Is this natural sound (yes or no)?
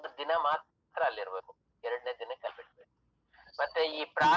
yes